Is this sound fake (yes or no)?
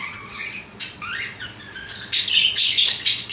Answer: yes